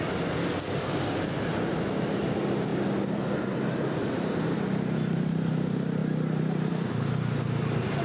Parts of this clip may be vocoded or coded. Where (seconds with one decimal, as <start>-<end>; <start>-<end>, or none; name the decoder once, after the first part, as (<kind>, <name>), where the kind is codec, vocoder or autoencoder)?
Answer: 0.0-2.7 (vocoder, BigVGAN v2); 3.4-6.0; 6.7-8.0